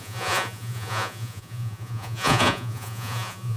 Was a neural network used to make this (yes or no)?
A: yes